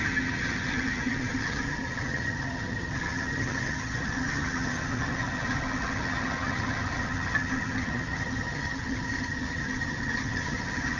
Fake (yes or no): yes